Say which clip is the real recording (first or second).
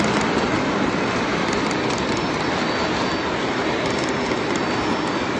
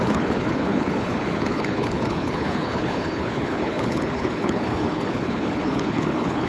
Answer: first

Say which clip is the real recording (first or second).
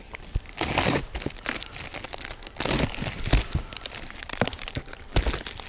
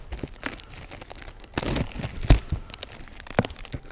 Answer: second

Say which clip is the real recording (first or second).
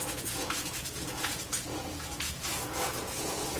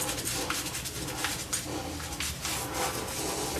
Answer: second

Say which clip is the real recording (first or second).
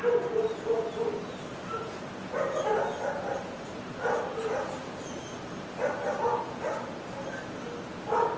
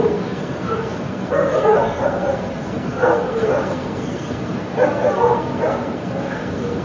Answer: first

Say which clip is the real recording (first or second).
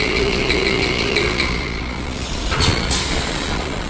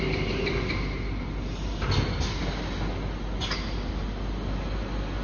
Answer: second